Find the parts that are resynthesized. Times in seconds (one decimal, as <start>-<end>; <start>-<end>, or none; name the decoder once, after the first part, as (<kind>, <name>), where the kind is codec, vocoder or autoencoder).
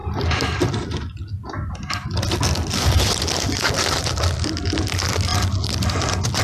none